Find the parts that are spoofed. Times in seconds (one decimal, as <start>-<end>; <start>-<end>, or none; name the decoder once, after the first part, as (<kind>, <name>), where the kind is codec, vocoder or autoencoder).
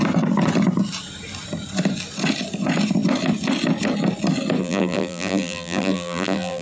4.6-6.6 (vocoder, BigVGAN v2)